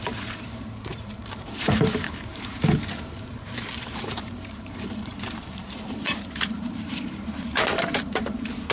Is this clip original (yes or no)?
no